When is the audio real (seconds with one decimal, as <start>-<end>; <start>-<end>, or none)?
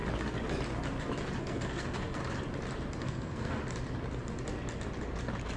0.0-1.4; 2.2-3.0; 3.6-5.6